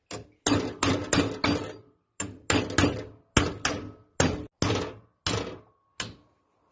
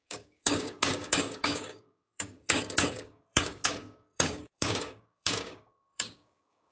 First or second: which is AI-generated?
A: second